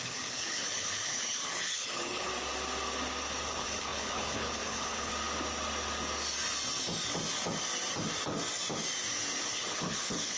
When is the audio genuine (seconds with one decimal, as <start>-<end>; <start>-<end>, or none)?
2.3-3.5; 5.1-9.4